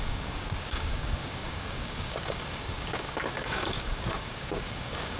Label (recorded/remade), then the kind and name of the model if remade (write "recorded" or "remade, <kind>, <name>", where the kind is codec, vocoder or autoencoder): remade, codec, DAC